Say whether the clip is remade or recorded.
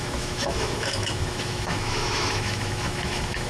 remade